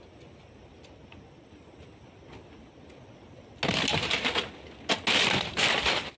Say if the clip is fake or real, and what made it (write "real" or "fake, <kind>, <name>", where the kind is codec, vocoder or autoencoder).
real